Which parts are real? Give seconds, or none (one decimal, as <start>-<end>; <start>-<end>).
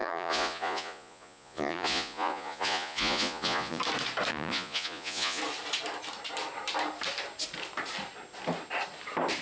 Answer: 3.8-4.3; 5.4-9.4